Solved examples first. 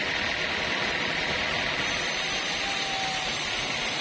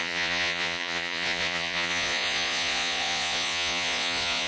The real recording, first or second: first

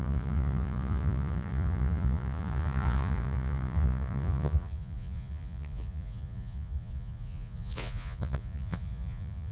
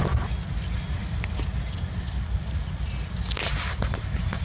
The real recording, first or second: second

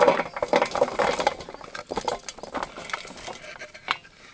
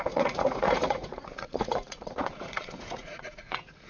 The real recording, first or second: first